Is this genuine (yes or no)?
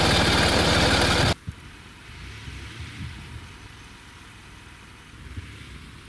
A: yes